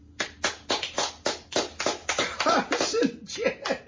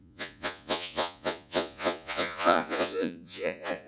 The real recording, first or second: first